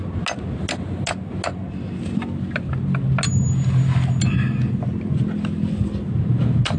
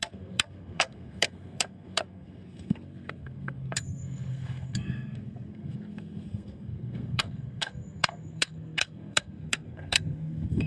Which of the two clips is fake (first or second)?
second